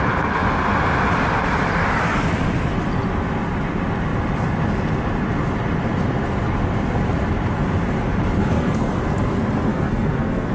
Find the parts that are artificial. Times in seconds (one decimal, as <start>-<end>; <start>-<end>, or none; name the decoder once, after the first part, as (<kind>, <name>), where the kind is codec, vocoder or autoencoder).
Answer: 8.4-8.9 (codec, SNAC); 9.7-10.5

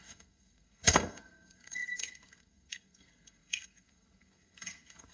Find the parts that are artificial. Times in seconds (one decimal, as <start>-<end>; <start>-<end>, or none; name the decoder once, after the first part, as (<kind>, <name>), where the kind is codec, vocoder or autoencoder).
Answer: 0.0-5.1 (codec, SNAC)

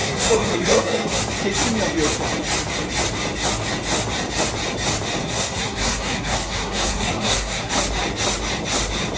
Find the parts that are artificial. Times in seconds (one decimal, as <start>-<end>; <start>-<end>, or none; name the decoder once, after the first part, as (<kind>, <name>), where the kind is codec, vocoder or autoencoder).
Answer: 0.0-1.2 (codec, SNAC); 5.2-7.7

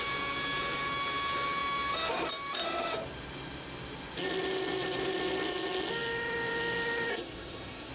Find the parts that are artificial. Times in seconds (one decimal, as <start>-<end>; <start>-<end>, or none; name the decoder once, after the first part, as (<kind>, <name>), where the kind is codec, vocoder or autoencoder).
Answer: 7.1-7.9 (codec, SNAC)

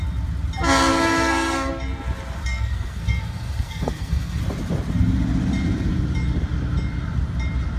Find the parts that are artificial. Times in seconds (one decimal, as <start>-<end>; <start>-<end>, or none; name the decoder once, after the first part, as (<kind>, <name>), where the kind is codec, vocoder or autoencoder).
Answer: 0.9-1.7 (codec, SNAC); 2.4-4.4

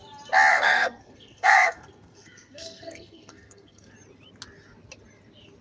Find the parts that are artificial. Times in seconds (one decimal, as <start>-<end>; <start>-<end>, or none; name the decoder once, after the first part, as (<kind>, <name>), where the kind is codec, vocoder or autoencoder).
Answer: 0.5-3.9 (codec, SNAC)

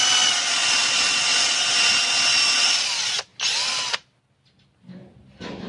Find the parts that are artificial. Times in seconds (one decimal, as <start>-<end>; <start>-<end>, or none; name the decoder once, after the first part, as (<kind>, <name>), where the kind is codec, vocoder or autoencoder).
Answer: none